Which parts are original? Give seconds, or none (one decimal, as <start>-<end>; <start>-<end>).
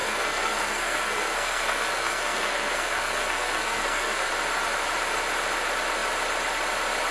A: 4.3-7.1